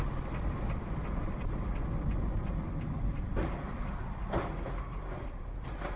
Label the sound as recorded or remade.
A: recorded